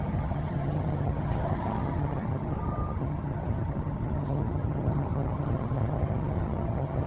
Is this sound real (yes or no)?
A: no